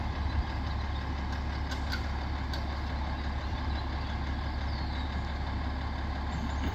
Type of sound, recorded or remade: recorded